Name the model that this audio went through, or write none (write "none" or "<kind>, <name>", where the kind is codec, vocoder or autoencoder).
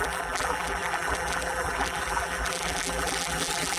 vocoder, BigVGAN v2